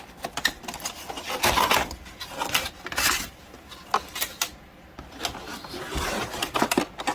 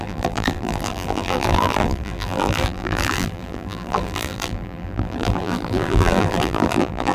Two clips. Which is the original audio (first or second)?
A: first